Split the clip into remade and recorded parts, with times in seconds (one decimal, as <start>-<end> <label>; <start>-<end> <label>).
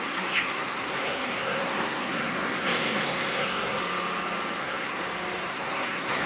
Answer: 0.0-3.8 remade; 3.8-4.6 recorded; 4.6-5.0 remade; 5.0-5.5 recorded; 5.5-6.3 remade